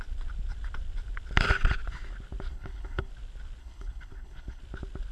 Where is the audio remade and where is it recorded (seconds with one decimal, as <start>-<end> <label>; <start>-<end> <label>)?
0.0-2.5 recorded; 2.5-3.1 remade; 3.1-3.6 recorded; 3.6-4.6 remade; 4.6-5.1 recorded

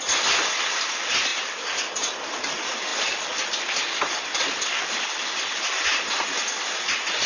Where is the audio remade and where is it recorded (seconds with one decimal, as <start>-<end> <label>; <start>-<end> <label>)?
0.0-7.3 recorded

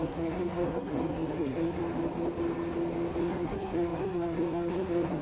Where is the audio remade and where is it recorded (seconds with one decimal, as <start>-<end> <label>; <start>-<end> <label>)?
0.0-1.8 remade; 1.8-3.2 recorded; 3.2-5.2 remade